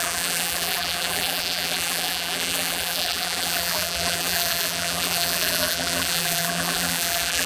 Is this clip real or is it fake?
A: fake